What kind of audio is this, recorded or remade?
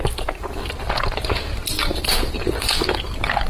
recorded